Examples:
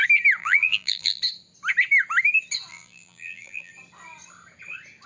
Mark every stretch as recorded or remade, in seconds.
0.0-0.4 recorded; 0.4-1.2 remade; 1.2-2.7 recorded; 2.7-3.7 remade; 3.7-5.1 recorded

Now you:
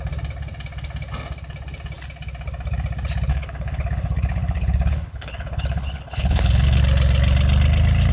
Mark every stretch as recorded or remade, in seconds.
0.0-3.3 recorded; 3.3-6.8 remade; 6.8-8.1 recorded

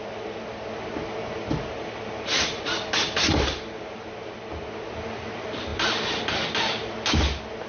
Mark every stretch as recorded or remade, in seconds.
0.0-7.7 recorded